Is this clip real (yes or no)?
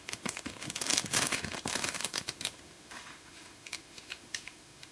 no